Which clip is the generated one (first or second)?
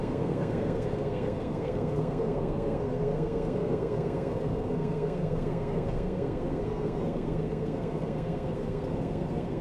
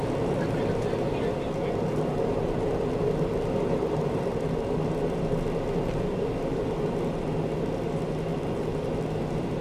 first